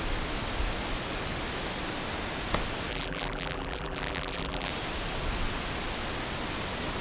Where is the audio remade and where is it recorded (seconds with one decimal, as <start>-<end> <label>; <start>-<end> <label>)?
0.0-2.9 recorded; 2.9-4.7 remade; 4.7-7.0 recorded